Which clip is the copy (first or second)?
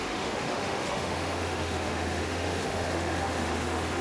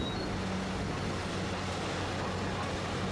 first